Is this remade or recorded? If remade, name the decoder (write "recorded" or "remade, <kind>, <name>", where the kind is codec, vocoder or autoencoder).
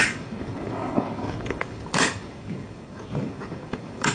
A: remade, codec, DAC